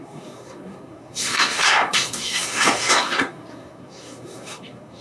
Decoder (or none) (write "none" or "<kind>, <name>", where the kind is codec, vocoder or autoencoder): codec, SNAC